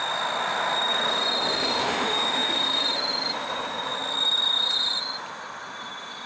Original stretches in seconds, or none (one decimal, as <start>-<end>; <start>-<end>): 0.0-1.8; 2.5-6.3